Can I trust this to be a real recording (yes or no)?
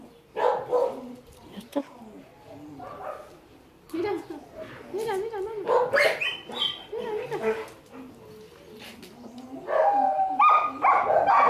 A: yes